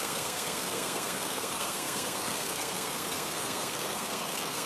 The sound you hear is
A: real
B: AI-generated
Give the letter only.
B